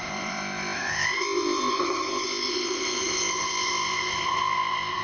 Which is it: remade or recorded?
remade